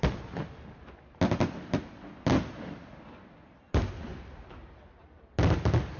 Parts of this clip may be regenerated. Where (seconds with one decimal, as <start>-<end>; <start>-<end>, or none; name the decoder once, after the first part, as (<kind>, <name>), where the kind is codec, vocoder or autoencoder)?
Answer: none